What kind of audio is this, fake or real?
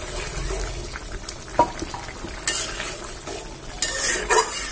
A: real